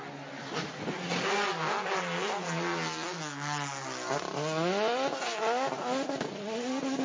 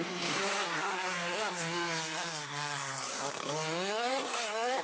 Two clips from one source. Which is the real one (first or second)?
first